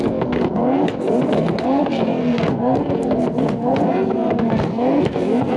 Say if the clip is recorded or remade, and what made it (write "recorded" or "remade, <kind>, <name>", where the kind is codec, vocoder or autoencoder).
remade, codec, SNAC